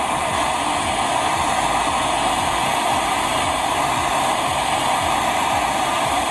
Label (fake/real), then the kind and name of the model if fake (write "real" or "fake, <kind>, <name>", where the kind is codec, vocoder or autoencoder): real